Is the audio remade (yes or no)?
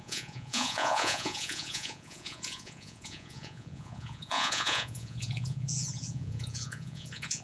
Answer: yes